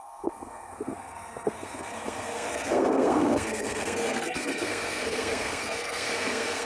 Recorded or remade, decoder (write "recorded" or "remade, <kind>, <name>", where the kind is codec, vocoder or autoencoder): remade, codec, SNAC